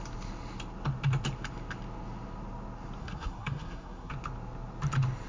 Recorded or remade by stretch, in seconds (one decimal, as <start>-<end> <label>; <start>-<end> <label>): 0.0-3.0 recorded; 3.0-4.1 remade; 4.1-5.3 recorded